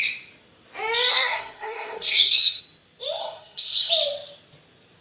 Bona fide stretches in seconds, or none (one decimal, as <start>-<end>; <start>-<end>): 0.0-1.1; 2.6-3.2; 3.9-5.0